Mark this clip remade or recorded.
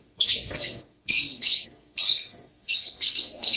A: remade